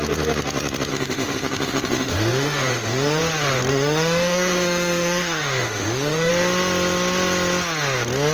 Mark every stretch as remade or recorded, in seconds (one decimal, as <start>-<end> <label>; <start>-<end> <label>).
0.0-0.9 recorded; 0.9-3.2 remade; 3.2-3.7 recorded; 3.7-6.3 remade; 6.3-8.3 recorded